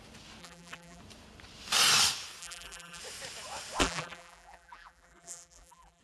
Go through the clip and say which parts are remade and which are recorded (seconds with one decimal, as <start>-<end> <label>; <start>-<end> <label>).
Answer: 0.0-0.4 recorded; 0.4-1.0 remade; 1.0-2.4 recorded; 2.4-3.0 remade; 3.0-3.8 recorded; 3.8-6.0 remade